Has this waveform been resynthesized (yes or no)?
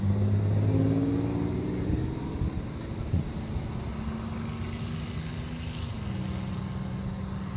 no